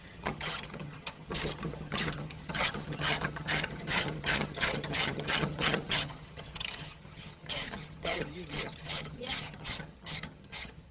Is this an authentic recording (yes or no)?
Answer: no